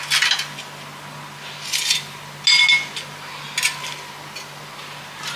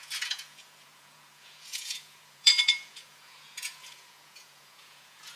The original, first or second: first